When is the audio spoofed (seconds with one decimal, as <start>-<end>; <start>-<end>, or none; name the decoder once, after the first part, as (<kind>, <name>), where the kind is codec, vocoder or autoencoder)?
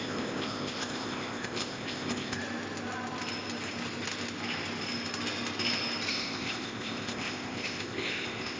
0.0-2.4 (codec, ZipCodec); 6.1-8.6